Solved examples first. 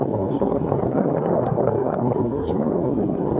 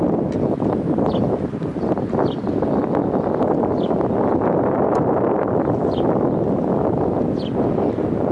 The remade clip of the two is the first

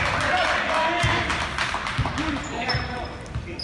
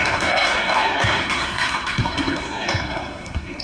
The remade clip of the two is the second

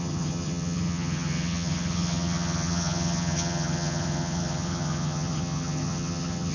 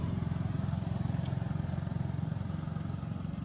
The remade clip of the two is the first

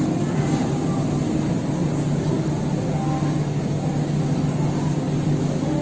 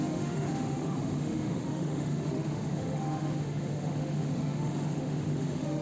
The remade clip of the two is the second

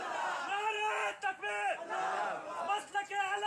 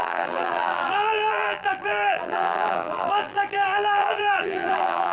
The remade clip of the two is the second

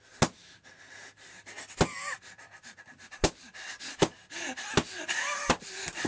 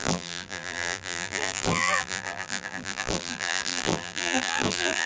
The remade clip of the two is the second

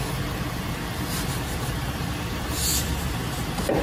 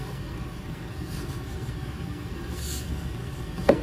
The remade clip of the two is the second